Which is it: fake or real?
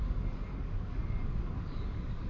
fake